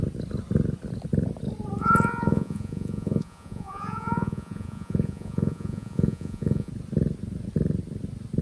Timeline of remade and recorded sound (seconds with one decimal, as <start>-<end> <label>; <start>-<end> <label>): 0.0-1.8 recorded; 1.8-6.7 remade; 6.7-8.4 recorded